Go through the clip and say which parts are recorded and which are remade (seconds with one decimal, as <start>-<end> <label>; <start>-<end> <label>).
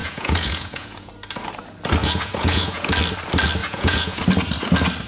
0.0-1.1 remade; 1.1-2.0 recorded; 2.0-2.9 remade; 2.9-3.6 recorded; 3.6-4.2 remade; 4.2-5.1 recorded